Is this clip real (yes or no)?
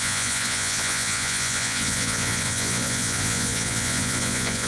no